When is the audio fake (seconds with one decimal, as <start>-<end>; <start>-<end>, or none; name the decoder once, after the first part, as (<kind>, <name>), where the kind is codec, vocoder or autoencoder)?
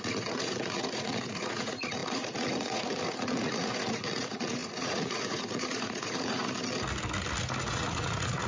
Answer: 0.0-6.4 (vocoder, Vocos); 7.7-8.5